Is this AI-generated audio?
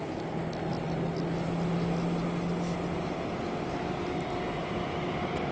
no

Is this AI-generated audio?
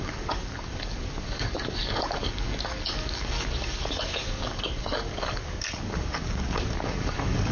yes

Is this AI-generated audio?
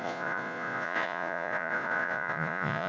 yes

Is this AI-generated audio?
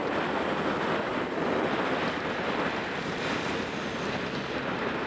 no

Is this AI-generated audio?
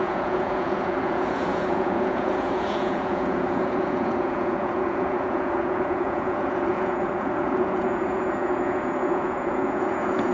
yes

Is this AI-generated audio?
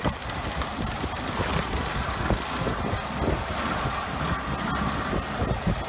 no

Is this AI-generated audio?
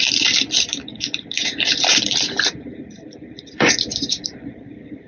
yes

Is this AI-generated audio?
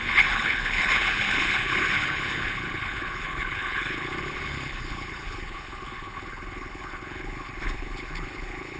yes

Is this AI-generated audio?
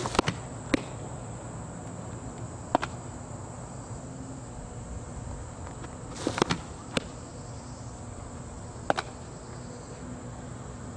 no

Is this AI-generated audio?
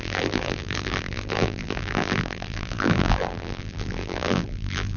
yes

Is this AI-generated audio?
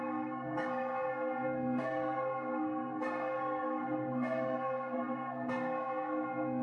yes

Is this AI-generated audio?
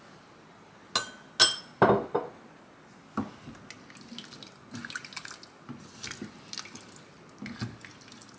no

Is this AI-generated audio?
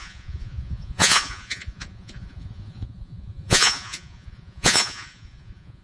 yes